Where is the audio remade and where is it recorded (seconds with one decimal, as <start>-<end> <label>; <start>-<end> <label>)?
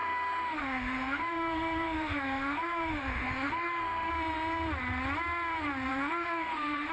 0.0-4.1 remade; 4.1-5.9 recorded; 5.9-6.9 remade